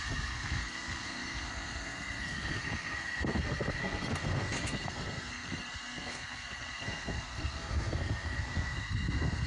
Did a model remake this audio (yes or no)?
yes